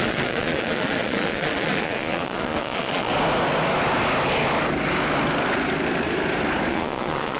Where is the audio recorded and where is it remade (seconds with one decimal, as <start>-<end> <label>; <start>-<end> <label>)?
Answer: 0.0-3.1 remade; 3.1-6.7 recorded; 6.7-7.4 remade